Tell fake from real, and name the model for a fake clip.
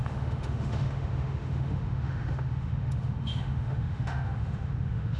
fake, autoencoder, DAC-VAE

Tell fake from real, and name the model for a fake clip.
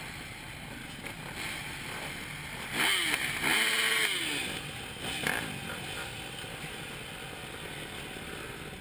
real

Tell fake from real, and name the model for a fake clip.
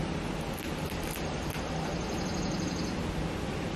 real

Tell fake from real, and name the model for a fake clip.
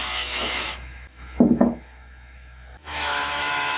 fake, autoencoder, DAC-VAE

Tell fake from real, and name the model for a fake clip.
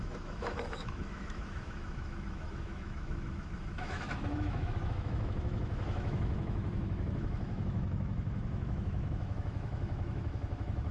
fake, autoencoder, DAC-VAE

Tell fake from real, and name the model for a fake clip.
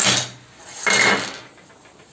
real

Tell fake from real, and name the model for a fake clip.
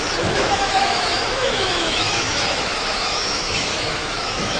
fake, autoencoder, DAC-VAE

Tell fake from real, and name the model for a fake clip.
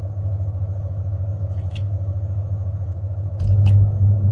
fake, autoencoder, DAC-VAE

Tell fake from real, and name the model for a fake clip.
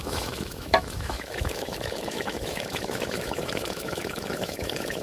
fake, autoencoder, DAC-VAE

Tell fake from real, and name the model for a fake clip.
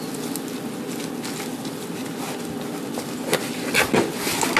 real